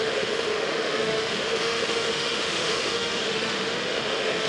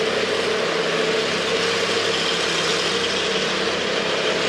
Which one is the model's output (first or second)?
first